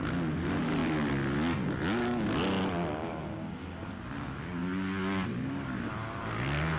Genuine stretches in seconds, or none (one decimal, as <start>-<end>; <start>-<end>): 0.0-6.8